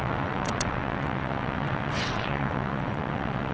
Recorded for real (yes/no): no